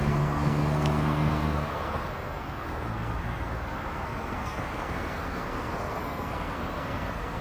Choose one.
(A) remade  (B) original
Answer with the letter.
A